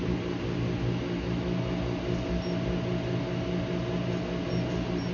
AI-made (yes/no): no